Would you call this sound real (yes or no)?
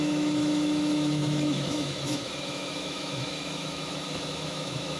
no